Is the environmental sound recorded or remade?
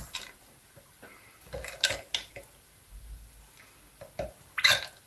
recorded